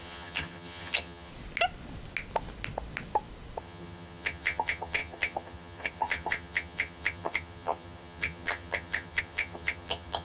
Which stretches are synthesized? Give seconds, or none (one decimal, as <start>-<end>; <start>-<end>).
0.0-1.3; 3.6-10.2